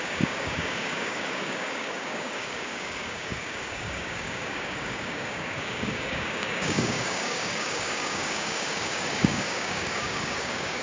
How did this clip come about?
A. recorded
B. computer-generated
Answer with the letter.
B